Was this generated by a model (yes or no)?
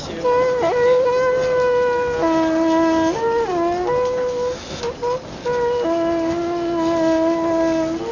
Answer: no